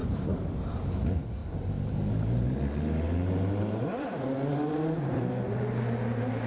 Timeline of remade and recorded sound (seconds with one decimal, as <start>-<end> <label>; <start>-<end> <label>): 0.0-0.9 remade; 0.9-1.4 recorded; 1.4-5.3 remade; 5.3-6.5 recorded

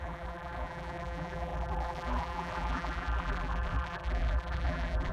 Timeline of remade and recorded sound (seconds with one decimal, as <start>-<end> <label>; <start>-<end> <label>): 0.0-5.1 remade

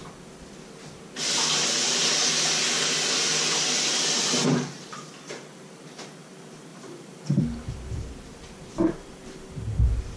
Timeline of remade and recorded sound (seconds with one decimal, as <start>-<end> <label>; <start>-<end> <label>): 0.0-4.4 recorded; 4.4-5.1 remade; 5.1-6.7 recorded; 6.7-9.2 remade; 9.2-10.2 recorded

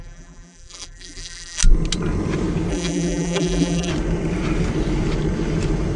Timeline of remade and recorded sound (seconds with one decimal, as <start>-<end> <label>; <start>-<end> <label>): 0.0-1.6 remade; 1.6-2.7 recorded; 2.7-3.9 remade; 3.9-6.0 recorded